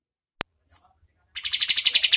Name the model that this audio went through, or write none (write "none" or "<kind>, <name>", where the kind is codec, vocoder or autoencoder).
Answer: none